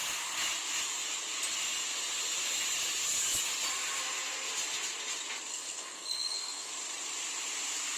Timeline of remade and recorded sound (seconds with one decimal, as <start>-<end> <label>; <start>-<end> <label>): 0.0-5.5 recorded; 5.5-6.7 remade; 6.7-8.0 recorded